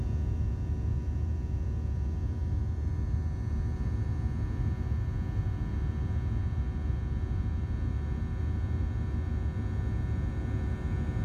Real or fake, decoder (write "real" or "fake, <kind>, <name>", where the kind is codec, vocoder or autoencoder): fake, vocoder, Vocos